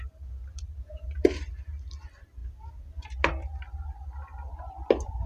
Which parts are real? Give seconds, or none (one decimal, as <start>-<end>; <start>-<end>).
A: 0.0-5.3